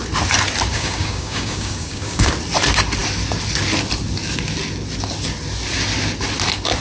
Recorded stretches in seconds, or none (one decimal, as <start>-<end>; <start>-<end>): 0.0-0.7; 2.3-6.8